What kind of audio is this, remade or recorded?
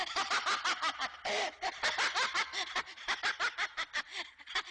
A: recorded